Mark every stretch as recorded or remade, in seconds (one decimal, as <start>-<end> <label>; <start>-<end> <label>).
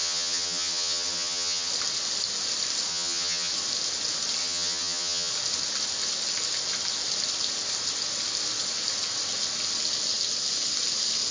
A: 0.0-1.7 remade; 1.7-2.9 recorded; 2.9-3.5 remade; 3.5-4.4 recorded; 4.4-5.3 remade; 5.3-11.3 recorded